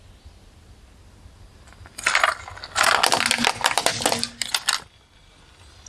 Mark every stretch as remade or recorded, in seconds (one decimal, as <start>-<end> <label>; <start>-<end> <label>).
0.0-5.9 recorded